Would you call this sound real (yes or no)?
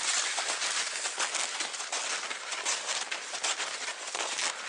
yes